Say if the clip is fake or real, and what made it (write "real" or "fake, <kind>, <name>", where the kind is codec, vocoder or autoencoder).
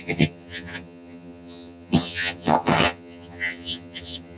fake, vocoder, HiFi-GAN